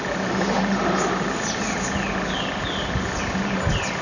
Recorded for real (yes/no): yes